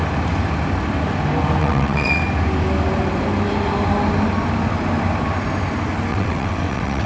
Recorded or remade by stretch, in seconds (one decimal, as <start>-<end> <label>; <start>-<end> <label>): 0.0-1.6 recorded; 1.6-2.2 remade; 2.2-6.1 recorded; 6.1-7.1 remade